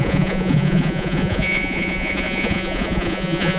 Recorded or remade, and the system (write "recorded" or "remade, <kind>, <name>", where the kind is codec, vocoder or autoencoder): remade, vocoder, Vocos